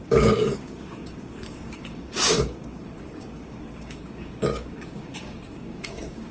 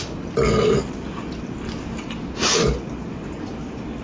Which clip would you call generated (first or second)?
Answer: first